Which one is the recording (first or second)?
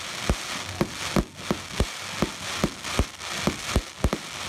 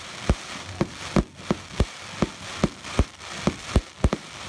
first